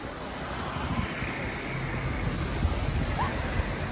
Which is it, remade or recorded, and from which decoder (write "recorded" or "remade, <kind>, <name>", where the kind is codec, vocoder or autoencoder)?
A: recorded